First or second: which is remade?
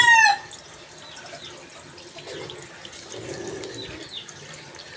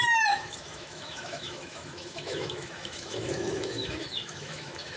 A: second